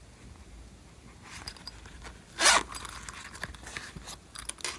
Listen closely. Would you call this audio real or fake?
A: real